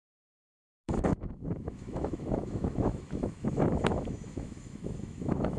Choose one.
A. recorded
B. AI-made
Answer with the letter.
B